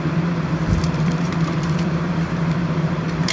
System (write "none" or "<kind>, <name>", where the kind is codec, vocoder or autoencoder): vocoder, BigVGAN v2